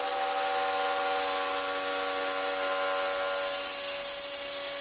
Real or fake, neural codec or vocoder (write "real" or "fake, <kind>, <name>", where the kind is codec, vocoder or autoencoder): real